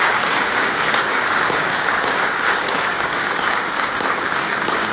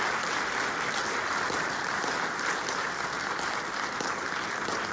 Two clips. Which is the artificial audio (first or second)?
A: first